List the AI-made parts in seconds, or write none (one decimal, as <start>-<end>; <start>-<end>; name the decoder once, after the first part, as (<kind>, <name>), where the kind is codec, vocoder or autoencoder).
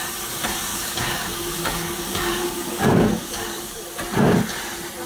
0.7-3.8 (codec, DAC)